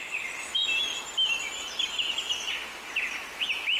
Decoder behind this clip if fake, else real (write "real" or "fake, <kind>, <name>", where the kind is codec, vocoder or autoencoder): real